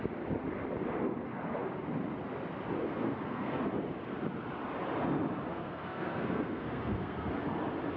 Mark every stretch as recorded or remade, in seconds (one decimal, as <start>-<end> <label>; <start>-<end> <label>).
0.0-2.8 recorded; 2.8-3.6 remade; 3.6-5.5 recorded; 5.5-7.3 remade; 7.3-8.0 recorded